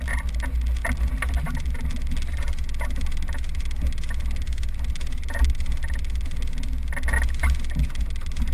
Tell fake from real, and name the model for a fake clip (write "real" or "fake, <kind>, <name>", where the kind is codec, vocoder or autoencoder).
real